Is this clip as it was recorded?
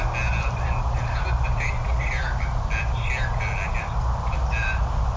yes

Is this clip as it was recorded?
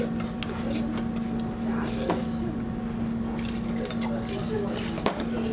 yes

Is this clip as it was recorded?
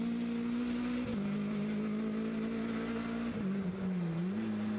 yes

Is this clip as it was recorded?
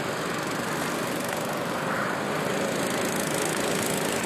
yes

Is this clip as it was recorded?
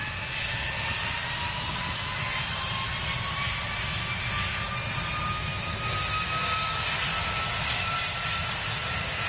yes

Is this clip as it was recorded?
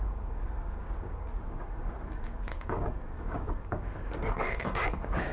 no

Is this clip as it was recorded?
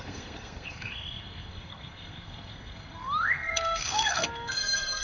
no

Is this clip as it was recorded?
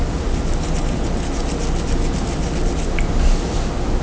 yes